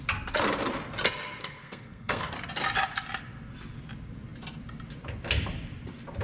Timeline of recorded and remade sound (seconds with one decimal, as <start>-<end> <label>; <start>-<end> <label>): 0.0-1.4 recorded; 1.4-2.3 remade; 2.3-6.2 recorded